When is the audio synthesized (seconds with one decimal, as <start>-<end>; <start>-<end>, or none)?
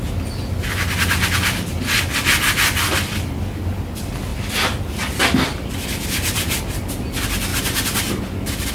none